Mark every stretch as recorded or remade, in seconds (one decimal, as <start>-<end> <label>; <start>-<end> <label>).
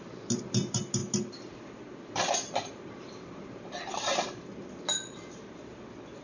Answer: 0.0-6.2 recorded